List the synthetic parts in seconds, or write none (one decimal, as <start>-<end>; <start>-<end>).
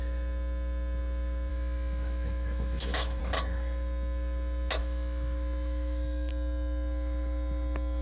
1.5-3.2; 4.8-6.3